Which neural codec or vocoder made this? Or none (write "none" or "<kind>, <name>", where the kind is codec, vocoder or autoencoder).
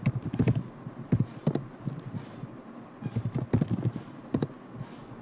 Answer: none